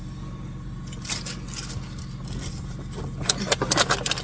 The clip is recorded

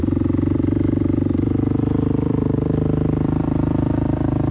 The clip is remade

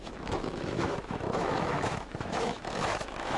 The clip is remade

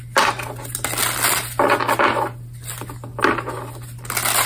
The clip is recorded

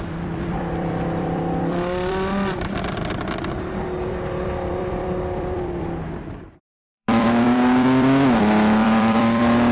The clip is remade